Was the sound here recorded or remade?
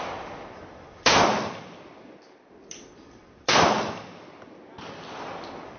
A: recorded